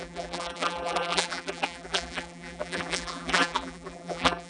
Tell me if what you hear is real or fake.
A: fake